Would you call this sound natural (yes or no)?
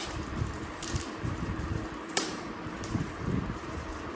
no